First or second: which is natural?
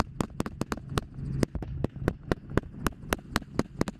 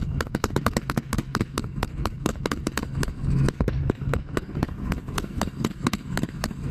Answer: first